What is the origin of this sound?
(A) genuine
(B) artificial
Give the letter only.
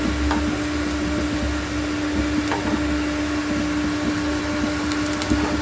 A